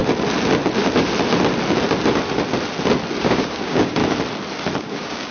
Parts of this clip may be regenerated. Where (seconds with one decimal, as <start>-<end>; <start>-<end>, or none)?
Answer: 3.2-4.0; 4.8-5.3